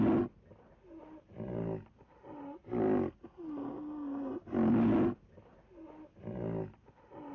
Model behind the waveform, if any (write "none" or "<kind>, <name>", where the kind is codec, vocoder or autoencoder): none